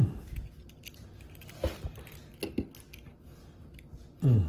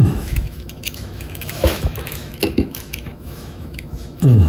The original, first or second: first